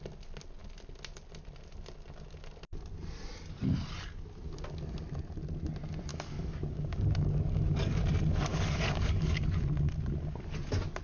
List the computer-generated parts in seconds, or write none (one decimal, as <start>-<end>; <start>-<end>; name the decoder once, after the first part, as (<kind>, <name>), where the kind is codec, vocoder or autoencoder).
6.1-8.0 (codec, DAC); 8.5-9.5

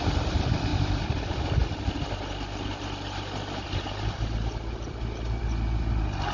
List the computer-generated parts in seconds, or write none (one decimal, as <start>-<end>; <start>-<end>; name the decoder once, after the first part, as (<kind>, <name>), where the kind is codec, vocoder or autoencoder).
none

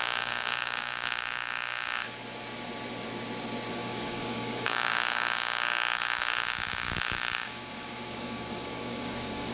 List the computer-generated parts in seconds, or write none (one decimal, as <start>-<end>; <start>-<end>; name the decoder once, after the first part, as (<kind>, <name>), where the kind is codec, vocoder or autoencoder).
0.0-2.0 (codec, DAC); 3.7-9.5